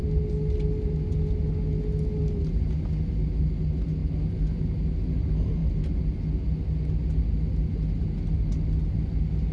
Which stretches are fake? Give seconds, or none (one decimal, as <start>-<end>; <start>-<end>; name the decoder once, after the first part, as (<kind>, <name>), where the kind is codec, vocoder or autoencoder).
none